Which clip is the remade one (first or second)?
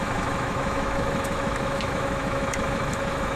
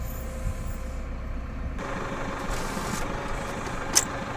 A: first